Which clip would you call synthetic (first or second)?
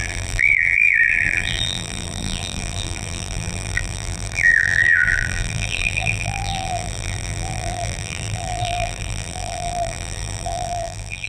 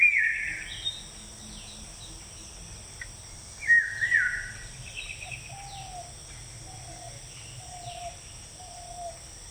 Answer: first